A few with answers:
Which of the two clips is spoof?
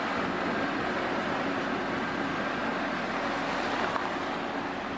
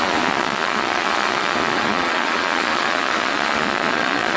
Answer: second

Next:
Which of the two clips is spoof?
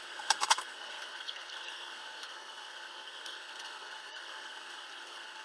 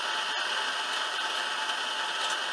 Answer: first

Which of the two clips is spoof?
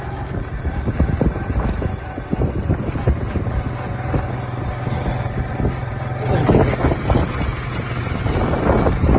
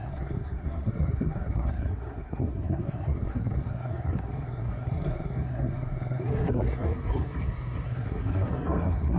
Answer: second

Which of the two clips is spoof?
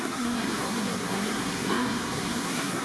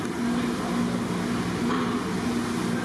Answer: first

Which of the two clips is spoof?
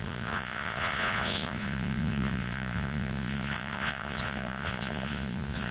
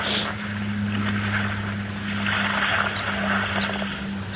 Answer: first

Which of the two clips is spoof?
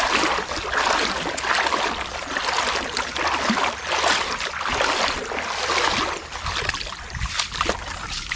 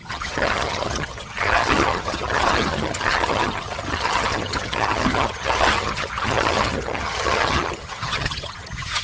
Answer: second